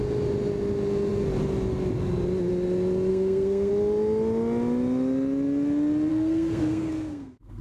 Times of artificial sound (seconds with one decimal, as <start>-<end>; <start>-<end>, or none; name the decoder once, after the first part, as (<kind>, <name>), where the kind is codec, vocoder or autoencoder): 3.1-3.7 (codec, SNAC); 6.1-7.6

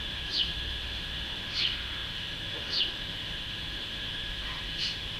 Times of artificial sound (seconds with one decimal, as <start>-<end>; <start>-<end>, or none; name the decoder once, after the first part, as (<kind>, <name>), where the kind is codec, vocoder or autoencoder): 0.0-5.2 (autoencoder, DAC-VAE)

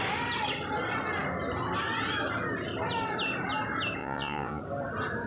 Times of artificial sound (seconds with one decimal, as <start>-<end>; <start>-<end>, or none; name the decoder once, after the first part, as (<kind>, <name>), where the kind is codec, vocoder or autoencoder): 4.0-4.6 (vocoder, Vocos)

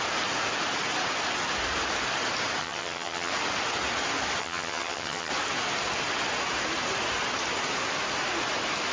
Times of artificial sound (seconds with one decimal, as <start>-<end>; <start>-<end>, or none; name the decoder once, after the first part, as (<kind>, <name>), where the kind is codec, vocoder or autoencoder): 2.6-3.3 (vocoder, HiFi-GAN); 4.4-5.3

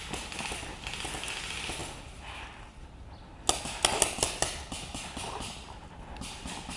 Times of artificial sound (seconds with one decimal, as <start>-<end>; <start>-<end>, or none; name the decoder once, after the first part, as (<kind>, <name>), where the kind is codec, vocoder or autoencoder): none

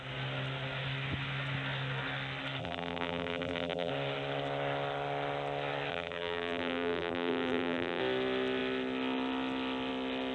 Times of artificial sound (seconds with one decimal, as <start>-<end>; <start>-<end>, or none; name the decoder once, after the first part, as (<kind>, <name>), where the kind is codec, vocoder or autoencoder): 2.6-3.9 (vocoder, BigVGAN v2); 5.9-8.0

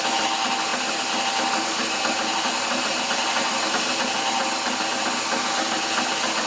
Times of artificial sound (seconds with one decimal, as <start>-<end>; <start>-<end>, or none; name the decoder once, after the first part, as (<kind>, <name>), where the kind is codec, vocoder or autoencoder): none

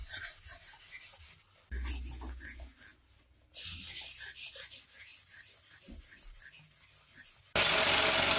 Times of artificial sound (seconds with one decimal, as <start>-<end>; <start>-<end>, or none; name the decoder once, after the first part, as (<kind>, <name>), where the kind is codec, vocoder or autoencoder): 5.1-6.3 (vocoder, BigVGAN v2)